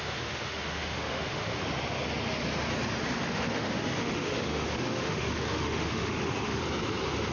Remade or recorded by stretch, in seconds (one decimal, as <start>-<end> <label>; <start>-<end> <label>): 0.0-1.6 remade; 1.6-3.3 recorded; 3.3-6.6 remade; 6.6-7.3 recorded